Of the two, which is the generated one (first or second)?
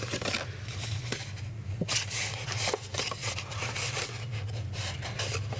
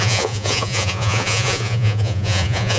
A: second